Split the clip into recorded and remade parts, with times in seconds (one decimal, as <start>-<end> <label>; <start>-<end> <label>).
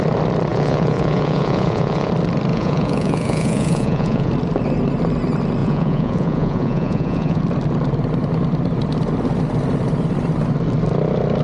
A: 0.0-0.5 recorded; 0.5-2.1 remade; 2.1-2.5 recorded; 2.5-4.3 remade; 4.3-5.6 recorded; 5.6-7.4 remade; 7.4-11.4 recorded